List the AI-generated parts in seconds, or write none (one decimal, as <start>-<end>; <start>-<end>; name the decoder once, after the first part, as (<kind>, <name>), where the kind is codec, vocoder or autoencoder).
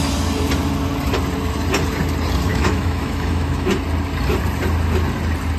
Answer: 2.5-3.7 (autoencoder, DAC-VAE)